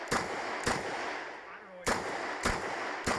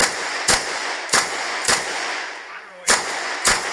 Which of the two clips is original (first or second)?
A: first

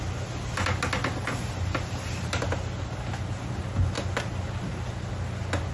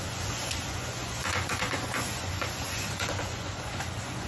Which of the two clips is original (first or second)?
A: first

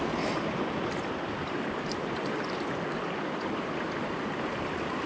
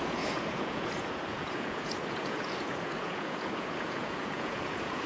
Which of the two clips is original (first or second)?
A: first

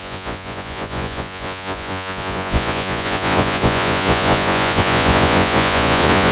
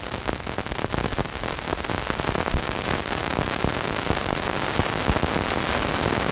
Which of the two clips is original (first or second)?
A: second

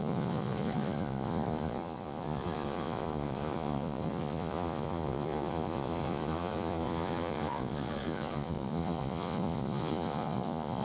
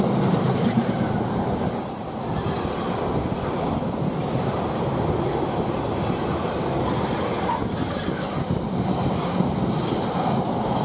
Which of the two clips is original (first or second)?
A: second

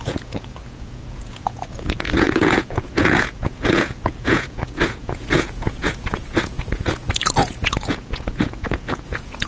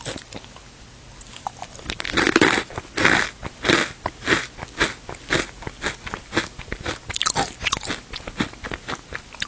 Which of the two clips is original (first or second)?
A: second